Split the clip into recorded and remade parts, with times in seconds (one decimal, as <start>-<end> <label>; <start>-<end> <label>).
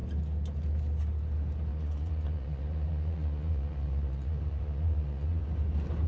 0.0-1.7 recorded; 1.7-5.4 remade; 5.4-6.1 recorded